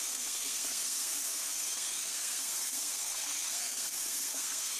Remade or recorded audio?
remade